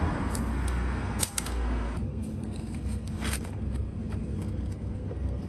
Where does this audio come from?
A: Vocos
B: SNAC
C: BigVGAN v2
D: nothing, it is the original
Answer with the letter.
B